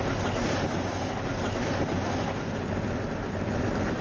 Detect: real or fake real